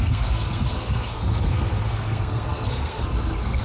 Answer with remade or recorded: remade